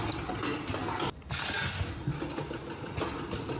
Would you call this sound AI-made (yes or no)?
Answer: no